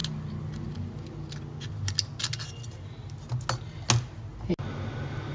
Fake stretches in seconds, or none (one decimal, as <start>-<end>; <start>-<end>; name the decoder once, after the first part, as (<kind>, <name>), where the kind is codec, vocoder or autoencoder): none